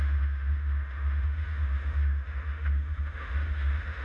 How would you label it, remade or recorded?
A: remade